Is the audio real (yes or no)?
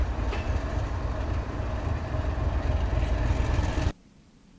no